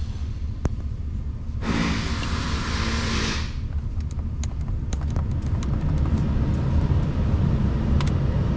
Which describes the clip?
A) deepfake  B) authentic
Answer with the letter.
B